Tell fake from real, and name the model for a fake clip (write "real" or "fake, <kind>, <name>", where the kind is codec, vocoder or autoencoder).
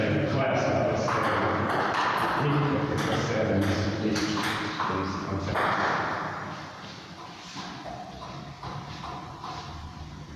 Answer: fake, vocoder, BigVGAN v2